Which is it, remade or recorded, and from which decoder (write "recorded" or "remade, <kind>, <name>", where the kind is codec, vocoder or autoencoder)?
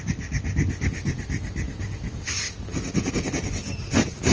recorded